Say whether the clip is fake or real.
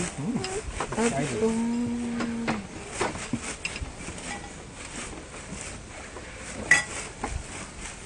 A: real